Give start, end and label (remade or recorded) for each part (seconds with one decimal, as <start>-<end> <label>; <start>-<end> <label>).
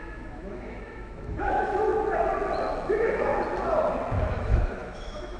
0.0-1.9 remade; 1.9-2.7 recorded; 2.7-3.3 remade; 3.3-4.2 recorded; 4.2-5.4 remade